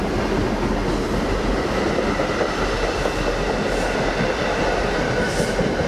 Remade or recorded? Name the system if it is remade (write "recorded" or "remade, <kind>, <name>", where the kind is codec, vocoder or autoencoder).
recorded